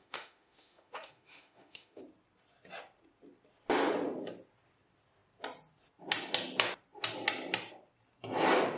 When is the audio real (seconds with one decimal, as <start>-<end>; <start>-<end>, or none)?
2.0-8.8